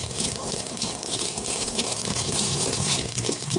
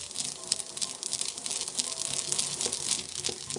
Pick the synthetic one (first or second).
first